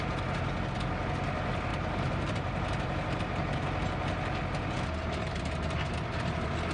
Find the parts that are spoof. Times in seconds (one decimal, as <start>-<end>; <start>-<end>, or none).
1.7-3.2